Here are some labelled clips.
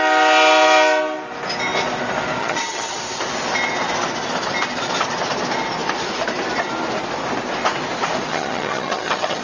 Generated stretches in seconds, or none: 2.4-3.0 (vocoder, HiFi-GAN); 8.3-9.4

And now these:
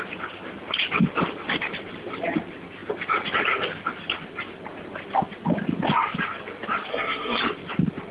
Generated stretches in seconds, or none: 6.9-7.4 (codec, SNAC)